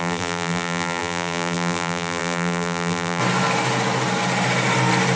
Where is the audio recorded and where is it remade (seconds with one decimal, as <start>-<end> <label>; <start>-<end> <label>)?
0.0-3.2 remade; 3.2-5.2 recorded